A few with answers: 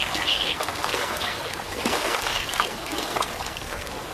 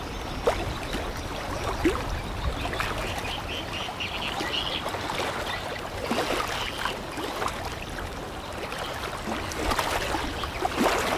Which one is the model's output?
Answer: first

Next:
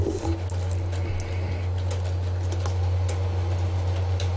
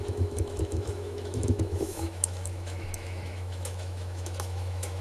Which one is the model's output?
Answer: second